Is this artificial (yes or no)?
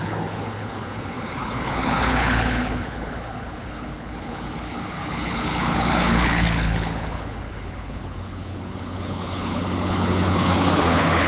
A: yes